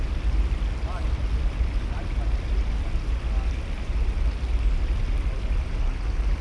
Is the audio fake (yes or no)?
no